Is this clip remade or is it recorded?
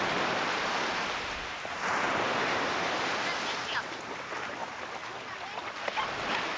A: recorded